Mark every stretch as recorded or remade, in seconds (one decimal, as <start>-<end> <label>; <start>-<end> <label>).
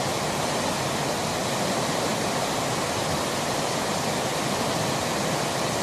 0.0-5.8 recorded